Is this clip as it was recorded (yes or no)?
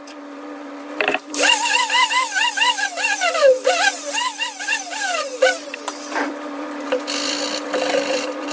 no